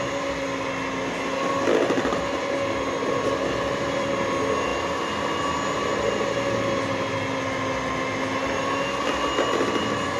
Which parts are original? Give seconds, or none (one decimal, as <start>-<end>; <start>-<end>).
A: 0.0-10.2